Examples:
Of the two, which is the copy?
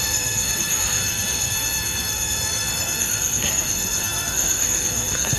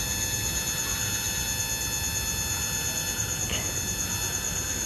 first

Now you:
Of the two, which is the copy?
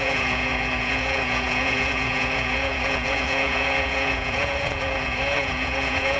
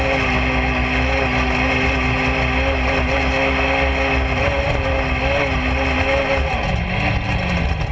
first